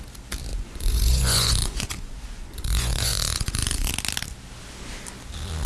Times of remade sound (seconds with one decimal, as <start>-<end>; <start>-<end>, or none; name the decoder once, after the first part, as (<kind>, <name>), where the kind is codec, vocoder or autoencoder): 0.5-3.9 (vocoder, Vocos)

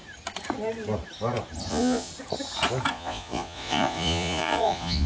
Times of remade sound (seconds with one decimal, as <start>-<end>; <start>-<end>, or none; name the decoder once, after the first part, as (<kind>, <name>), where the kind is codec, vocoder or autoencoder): 1.7-2.1 (vocoder, Vocos); 2.9-5.1

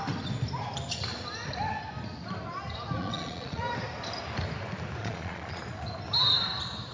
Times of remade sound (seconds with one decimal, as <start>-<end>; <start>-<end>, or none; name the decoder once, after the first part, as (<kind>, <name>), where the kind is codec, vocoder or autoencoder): 3.0-3.6 (vocoder, Vocos); 5.0-5.6

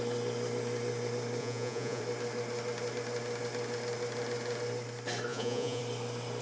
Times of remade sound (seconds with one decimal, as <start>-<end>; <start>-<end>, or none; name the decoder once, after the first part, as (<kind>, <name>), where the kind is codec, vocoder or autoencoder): 1.4-2.0 (vocoder, Vocos); 5.3-5.8

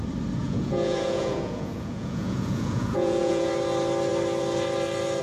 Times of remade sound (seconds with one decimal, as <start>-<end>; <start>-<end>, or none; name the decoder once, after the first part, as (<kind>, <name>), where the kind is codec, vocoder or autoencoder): 0.4-3.5 (vocoder, Vocos)

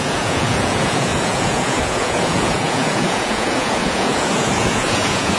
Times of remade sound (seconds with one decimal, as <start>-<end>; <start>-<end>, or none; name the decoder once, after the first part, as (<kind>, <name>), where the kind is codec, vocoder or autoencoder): 0.0-5.4 (vocoder, Vocos)

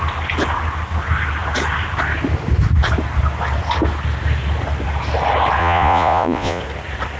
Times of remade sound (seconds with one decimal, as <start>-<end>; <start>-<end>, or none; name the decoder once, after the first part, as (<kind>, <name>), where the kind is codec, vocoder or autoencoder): 5.6-6.6 (vocoder, Vocos)

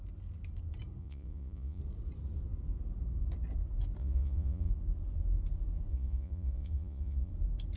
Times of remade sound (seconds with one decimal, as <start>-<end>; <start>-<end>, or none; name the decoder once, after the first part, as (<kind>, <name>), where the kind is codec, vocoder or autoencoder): 1.0-1.8 (vocoder, Vocos); 4.0-4.7; 5.9-7.3